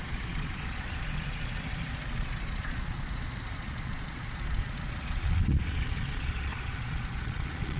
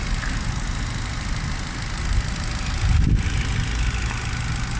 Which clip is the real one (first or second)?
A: second